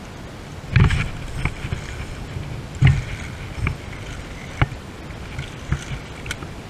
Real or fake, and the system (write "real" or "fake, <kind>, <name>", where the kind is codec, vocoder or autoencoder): real